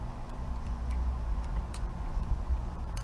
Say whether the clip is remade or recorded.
remade